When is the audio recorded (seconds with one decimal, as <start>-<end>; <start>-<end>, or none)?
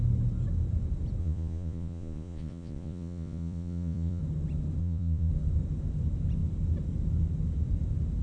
0.0-1.2; 4.2-4.8; 5.3-8.2